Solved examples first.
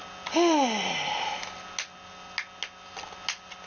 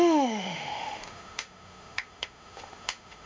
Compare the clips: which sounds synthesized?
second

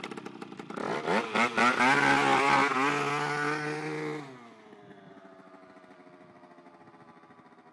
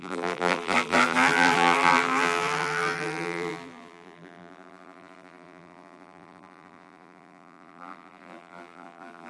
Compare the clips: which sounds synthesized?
second